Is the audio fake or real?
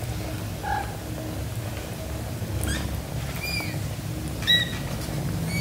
real